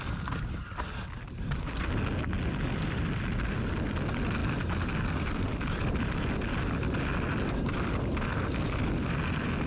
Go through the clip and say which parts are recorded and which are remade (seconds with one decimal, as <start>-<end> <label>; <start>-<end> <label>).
0.0-9.7 recorded